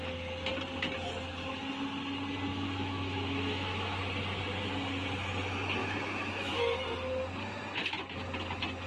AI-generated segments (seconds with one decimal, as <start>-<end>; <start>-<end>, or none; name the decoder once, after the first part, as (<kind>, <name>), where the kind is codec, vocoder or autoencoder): 2.5-4.0 (autoencoder, DAC-VAE); 5.8-6.6

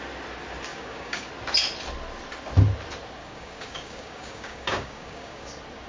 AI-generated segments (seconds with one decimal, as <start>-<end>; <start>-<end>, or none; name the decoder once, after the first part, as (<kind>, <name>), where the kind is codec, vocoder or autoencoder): 0.7-1.3 (codec, DAC); 3.2-5.5

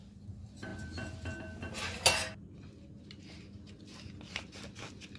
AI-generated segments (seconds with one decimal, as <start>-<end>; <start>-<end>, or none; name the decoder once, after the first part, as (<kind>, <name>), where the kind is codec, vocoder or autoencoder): none

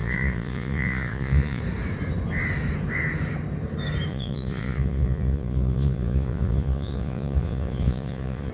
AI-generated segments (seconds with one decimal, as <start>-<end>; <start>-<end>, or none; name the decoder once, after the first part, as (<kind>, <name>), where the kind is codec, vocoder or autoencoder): 0.0-1.6 (vocoder, Vocos); 4.1-8.5

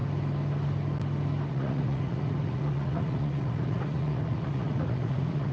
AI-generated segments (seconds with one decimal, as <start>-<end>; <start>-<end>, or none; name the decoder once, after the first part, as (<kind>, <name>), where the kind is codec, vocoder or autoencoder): 1.5-5.5 (vocoder, Vocos)

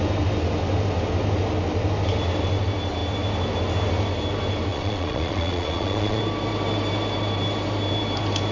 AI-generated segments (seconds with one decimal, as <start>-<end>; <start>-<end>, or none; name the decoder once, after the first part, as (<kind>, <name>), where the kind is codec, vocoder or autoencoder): 4.7-6.2 (vocoder, Vocos)

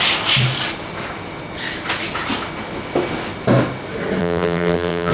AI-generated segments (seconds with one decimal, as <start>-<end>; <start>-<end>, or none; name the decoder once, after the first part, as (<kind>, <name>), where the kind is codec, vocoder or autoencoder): 4.2-5.1 (vocoder, BigVGAN v2)

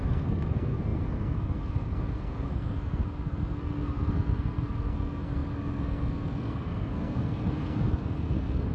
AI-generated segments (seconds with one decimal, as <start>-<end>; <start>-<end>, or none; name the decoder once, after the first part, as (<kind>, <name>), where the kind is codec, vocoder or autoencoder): 0.0-8.7 (codec, SNAC)